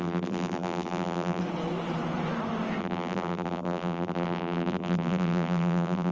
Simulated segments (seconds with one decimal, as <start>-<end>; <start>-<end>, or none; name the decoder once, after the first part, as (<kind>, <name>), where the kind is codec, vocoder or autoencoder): 0.0-1.4 (vocoder, BigVGAN v2); 2.8-6.1